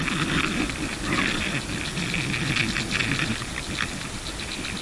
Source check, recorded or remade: recorded